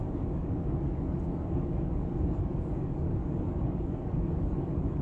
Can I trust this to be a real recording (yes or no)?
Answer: no